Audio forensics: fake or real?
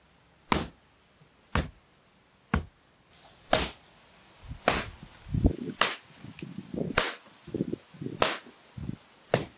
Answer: real